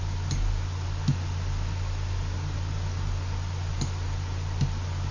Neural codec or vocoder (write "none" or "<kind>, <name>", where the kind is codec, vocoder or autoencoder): none